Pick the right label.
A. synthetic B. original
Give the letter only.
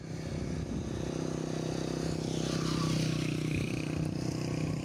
B